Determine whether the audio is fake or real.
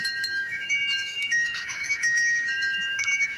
fake